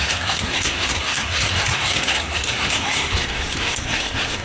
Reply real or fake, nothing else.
fake